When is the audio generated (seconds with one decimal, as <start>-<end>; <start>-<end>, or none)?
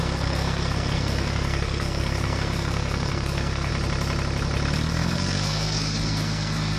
0.0-3.7; 4.9-6.8